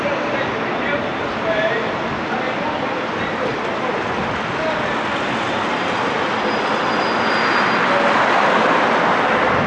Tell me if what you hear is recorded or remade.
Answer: recorded